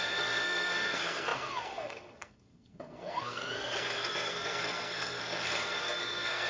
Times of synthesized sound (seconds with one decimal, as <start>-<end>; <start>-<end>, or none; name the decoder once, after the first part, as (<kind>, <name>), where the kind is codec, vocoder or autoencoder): 0.0-6.5 (codec, SNAC)